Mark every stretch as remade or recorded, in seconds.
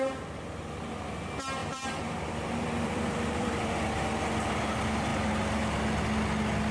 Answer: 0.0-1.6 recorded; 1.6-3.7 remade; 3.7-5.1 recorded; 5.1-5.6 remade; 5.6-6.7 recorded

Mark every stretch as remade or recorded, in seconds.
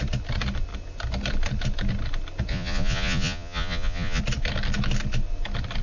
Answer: 0.0-2.5 recorded; 2.5-4.2 remade; 4.2-5.8 recorded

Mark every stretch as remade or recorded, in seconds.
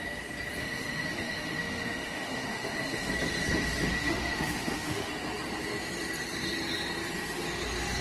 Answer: 0.0-0.6 recorded; 0.6-3.1 remade; 3.1-3.9 recorded; 3.9-5.1 remade; 5.1-8.0 recorded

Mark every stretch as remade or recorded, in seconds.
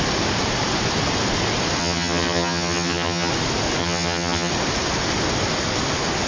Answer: 0.0-1.8 recorded; 1.8-3.3 remade; 3.3-3.8 recorded; 3.8-4.5 remade; 4.5-6.3 recorded